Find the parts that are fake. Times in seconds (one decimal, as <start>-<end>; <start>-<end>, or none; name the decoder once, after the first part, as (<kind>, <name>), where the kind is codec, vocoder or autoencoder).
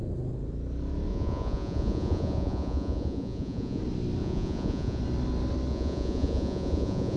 1.1-3.8 (vocoder, Vocos); 4.2-5.0; 5.7-7.2